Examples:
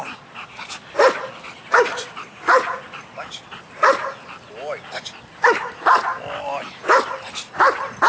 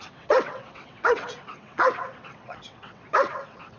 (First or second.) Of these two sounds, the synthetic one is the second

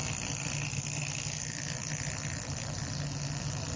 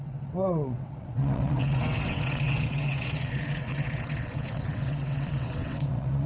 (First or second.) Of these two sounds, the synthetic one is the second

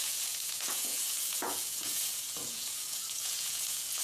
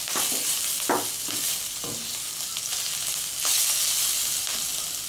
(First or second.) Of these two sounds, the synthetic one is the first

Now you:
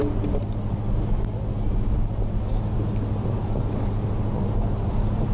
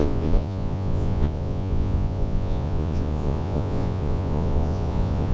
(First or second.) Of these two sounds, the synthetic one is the second